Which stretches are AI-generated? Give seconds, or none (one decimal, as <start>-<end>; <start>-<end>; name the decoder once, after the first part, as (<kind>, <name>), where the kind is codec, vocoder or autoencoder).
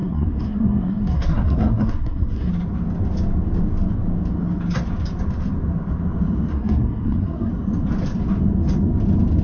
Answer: 0.0-2.5 (codec, SNAC); 6.5-7.5